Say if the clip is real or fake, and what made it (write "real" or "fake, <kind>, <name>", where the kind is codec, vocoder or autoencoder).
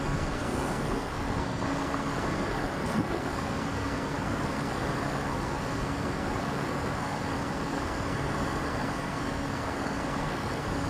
fake, codec, SNAC